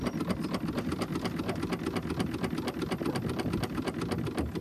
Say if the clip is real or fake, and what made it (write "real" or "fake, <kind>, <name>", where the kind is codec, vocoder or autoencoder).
real